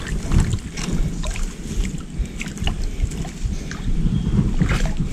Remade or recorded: recorded